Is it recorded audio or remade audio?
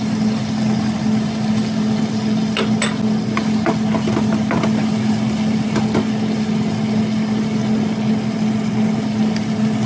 recorded